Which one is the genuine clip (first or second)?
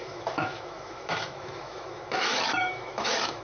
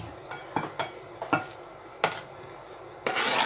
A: second